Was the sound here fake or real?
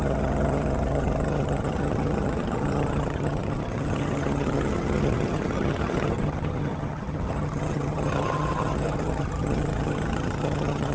fake